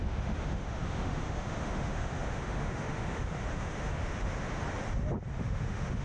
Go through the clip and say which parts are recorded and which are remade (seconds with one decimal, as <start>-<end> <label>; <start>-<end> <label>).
0.0-4.6 remade; 4.6-5.3 recorded; 5.3-6.0 remade